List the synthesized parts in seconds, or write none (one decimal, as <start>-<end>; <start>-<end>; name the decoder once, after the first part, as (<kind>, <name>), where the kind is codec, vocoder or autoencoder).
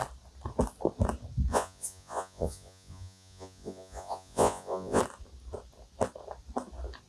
1.5-5.0 (vocoder, Vocos)